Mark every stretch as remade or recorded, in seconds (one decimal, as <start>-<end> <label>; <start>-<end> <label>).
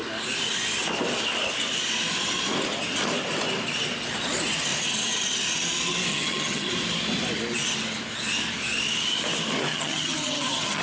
0.0-6.1 recorded; 6.1-6.7 remade; 6.7-9.7 recorded; 9.7-10.8 remade